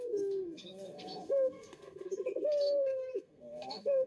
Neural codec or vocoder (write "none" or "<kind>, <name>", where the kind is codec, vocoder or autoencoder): codec, SNAC